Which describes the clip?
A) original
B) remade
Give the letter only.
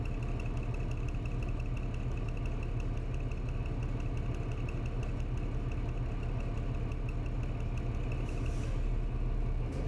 A